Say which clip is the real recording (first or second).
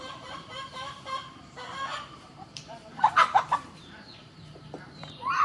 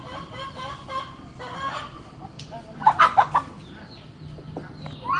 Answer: second